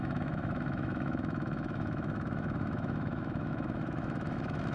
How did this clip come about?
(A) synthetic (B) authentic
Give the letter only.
A